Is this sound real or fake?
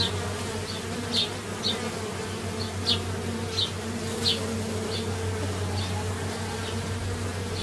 real